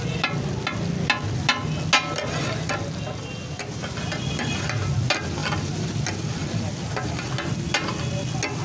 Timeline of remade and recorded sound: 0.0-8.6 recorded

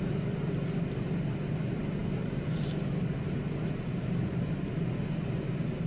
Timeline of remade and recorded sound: 0.0-5.9 recorded

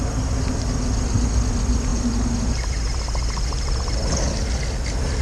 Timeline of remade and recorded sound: 0.0-5.2 recorded

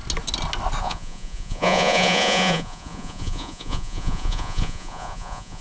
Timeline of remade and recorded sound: 0.0-0.8 recorded; 0.8-5.6 remade

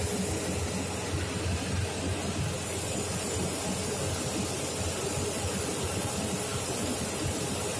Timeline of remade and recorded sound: 0.0-7.8 recorded